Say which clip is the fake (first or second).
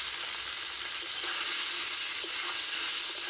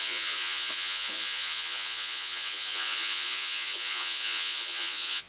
second